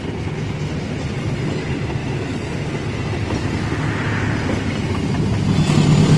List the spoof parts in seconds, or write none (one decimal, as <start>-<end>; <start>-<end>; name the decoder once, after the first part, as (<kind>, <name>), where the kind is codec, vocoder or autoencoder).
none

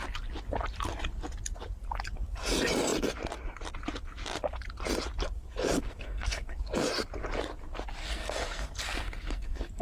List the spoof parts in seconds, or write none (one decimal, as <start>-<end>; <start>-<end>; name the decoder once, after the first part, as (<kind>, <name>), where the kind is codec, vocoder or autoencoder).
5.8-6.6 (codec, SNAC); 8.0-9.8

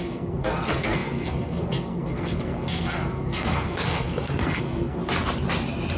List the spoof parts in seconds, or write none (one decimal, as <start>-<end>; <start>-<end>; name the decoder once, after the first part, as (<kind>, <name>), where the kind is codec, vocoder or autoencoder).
0.0-5.0 (codec, SNAC)